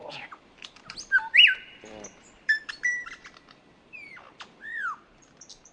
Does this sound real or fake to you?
fake